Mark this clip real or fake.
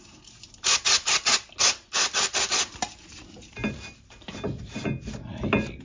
real